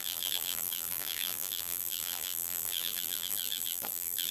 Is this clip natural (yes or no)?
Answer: no